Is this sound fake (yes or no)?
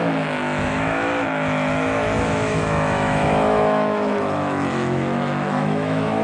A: yes